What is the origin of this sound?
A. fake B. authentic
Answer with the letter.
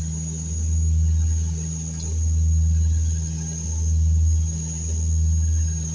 B